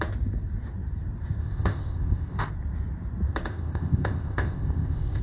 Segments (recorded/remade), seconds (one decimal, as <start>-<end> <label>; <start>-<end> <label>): 0.0-1.4 recorded; 1.4-2.5 remade; 2.5-3.5 recorded; 3.5-5.2 remade